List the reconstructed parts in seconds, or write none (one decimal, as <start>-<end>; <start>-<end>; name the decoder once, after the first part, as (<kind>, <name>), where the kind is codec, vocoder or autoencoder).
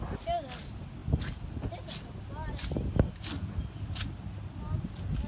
none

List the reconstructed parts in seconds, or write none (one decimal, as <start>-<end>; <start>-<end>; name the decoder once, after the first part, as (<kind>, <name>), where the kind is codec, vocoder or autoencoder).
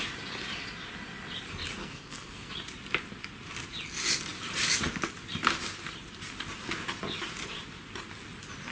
1.8-2.5 (codec, SNAC)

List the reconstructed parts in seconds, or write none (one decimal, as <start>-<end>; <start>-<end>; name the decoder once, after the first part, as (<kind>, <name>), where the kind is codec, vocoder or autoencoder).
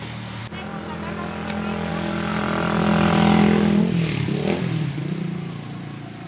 none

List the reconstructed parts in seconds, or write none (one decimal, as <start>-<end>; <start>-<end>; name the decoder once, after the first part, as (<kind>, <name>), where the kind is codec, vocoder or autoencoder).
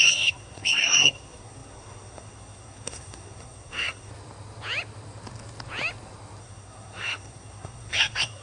0.0-4.1 (codec, SNAC); 6.4-8.4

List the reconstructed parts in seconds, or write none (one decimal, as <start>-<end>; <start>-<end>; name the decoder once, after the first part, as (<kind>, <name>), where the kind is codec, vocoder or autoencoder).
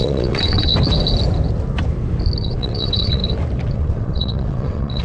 0.0-0.7 (vocoder, WaveNeXt); 2.4-3.2; 3.7-5.0